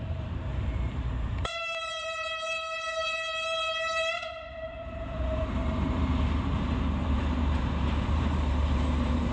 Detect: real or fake fake